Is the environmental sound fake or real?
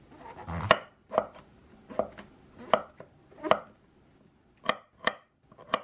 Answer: real